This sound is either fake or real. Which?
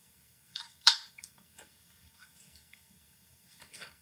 fake